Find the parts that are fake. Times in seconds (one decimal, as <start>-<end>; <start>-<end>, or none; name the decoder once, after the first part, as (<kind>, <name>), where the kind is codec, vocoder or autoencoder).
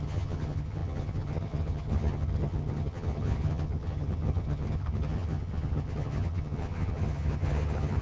0.0-8.0 (vocoder, HiFi-GAN)